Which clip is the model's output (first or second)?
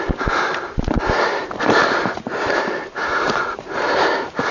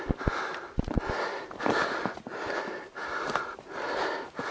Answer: first